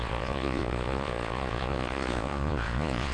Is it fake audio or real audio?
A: fake